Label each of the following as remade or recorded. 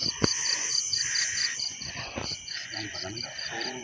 remade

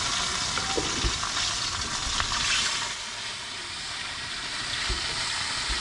recorded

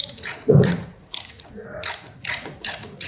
remade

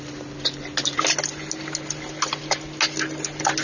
recorded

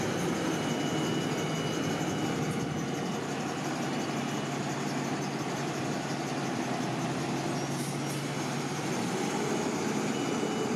recorded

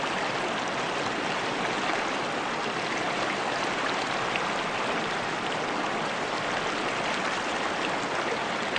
recorded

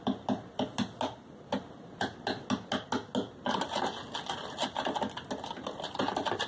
recorded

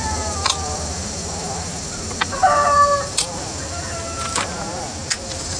remade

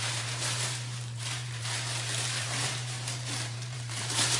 remade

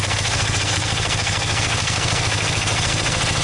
remade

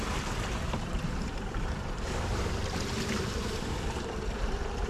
remade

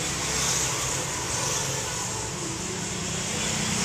recorded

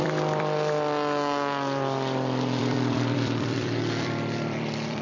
remade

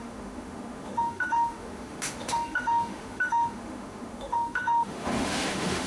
remade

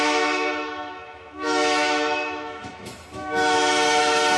remade